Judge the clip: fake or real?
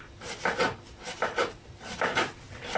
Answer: real